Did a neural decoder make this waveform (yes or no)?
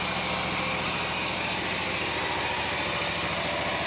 no